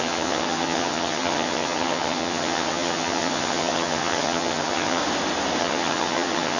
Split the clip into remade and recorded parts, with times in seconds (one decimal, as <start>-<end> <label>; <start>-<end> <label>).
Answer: 0.0-5.0 remade; 5.0-5.6 recorded; 5.6-6.6 remade